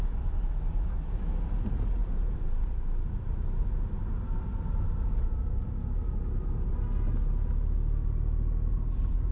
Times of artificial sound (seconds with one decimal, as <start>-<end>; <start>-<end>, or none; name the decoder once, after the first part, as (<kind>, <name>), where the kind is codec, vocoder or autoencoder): 2.0-3.6 (vocoder, BigVGAN v2)